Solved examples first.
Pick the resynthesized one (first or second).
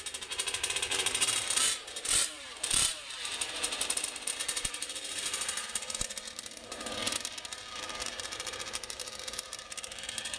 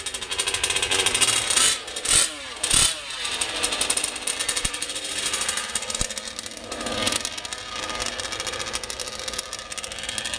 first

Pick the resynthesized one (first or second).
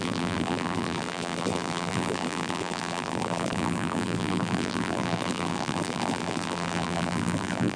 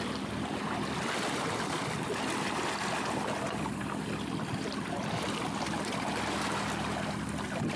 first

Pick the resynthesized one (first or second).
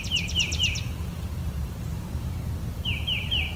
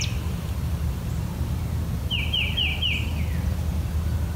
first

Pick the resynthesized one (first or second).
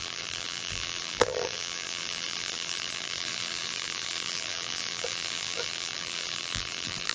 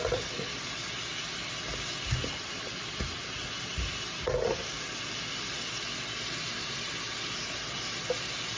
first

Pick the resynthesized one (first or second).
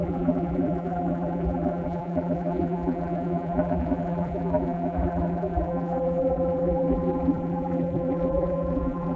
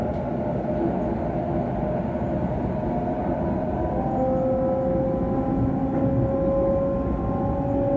first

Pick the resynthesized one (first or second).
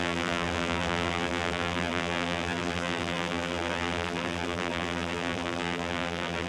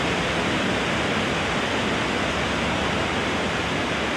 first